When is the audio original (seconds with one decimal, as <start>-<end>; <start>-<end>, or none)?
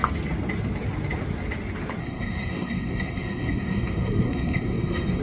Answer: 0.0-2.0